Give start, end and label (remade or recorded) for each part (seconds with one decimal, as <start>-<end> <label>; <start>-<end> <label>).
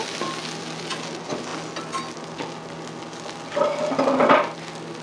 0.0-5.0 recorded